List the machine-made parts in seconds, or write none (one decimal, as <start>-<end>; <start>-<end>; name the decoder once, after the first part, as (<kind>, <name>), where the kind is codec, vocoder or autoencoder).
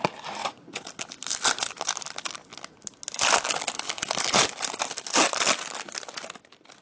0.4-0.9 (vocoder, Vocos)